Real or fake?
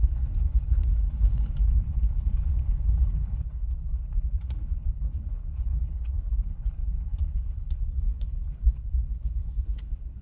fake